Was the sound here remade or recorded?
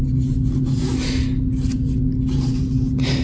recorded